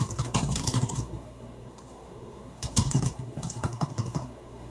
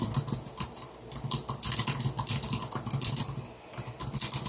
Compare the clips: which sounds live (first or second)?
second